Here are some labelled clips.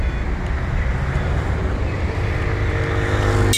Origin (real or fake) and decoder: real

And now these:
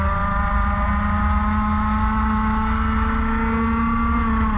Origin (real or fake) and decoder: real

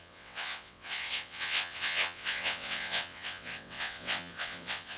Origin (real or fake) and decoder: fake, vocoder, WaveNeXt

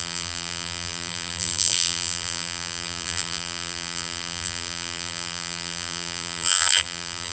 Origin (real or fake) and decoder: fake, vocoder, BigVGAN v2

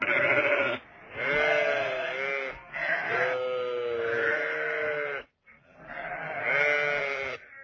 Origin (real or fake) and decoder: real